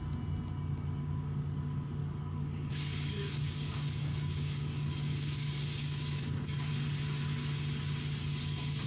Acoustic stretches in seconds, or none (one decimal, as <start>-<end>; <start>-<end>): 0.0-2.0; 6.7-8.9